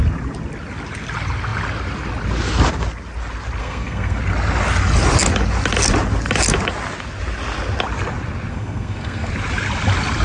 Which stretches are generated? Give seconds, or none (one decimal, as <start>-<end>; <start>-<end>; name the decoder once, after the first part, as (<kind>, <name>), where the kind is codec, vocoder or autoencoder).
3.6-4.2 (codec, SNAC); 8.5-9.3